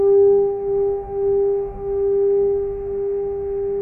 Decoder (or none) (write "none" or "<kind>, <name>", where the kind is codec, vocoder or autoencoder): autoencoder, DAC-VAE